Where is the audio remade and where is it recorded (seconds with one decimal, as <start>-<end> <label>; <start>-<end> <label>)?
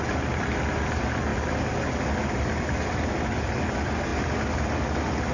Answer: 0.0-5.3 recorded